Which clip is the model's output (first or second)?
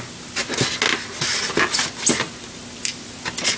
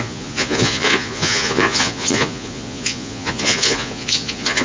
second